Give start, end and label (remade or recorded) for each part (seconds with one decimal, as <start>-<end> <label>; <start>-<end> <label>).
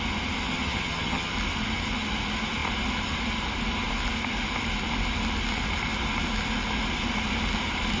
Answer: 0.0-0.5 recorded; 0.5-1.3 remade; 1.3-8.0 recorded